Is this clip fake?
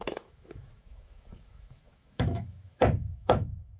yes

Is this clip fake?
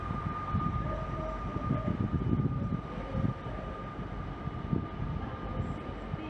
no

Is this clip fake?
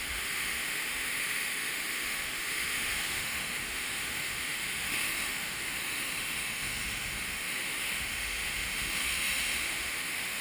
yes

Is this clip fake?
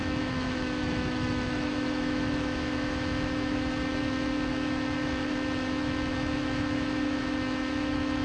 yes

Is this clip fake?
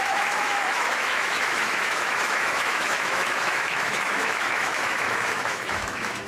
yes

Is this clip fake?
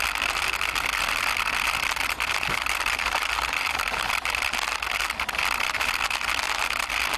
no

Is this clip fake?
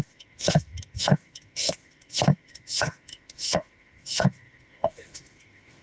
yes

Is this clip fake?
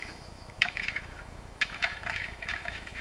yes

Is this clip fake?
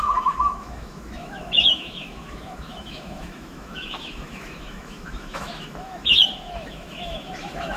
yes